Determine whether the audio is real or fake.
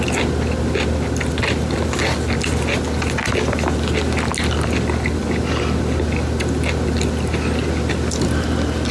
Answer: real